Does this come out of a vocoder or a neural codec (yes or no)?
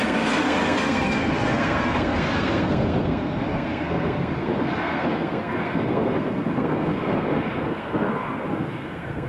yes